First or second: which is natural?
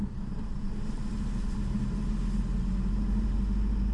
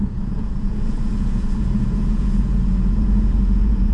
first